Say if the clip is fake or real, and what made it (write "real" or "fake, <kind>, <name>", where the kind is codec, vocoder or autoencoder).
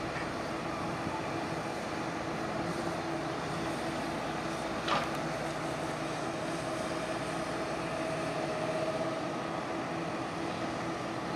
real